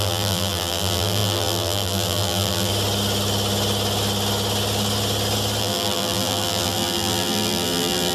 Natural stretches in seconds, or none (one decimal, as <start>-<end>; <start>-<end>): 2.7-5.6